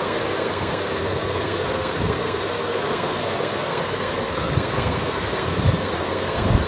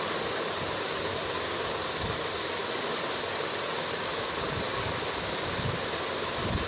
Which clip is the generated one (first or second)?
first